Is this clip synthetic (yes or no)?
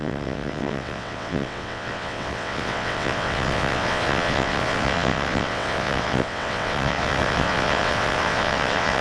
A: yes